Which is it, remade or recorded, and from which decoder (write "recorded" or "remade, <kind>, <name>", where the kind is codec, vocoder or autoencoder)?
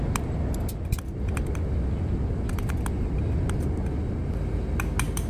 recorded